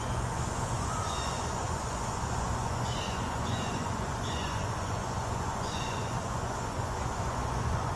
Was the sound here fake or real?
fake